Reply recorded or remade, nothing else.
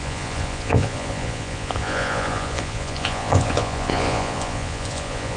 remade